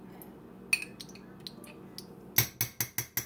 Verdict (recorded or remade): recorded